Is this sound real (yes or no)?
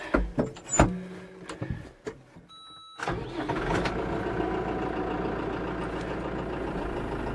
yes